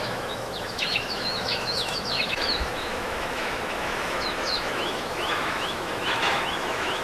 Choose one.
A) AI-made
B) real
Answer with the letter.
A